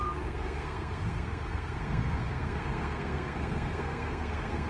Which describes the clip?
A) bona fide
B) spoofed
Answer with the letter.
B